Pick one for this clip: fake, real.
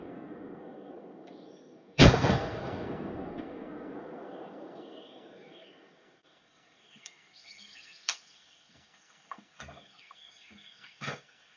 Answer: fake